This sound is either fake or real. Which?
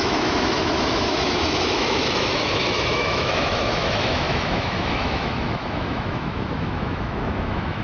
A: fake